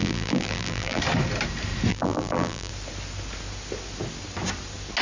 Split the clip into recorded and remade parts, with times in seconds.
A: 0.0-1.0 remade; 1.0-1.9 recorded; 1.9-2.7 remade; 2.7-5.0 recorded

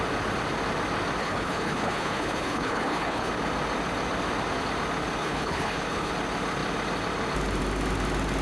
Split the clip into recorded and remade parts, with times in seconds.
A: 0.0-1.2 recorded; 1.2-3.3 remade; 3.3-5.2 recorded; 5.2-6.1 remade; 6.1-8.4 recorded

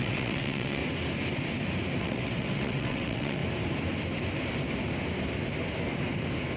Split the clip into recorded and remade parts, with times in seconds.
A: 0.0-0.8 remade; 0.8-2.0 recorded; 2.0-3.4 remade; 3.4-6.6 recorded

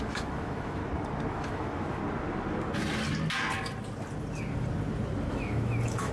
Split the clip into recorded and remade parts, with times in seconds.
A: 0.0-0.8 remade; 0.8-1.3 recorded; 1.3-2.0 remade; 2.0-5.3 recorded; 5.3-6.1 remade

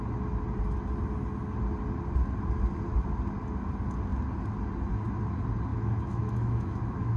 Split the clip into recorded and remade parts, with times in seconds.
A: 0.0-5.7 recorded; 5.7-7.2 remade